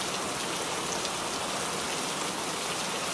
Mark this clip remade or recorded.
recorded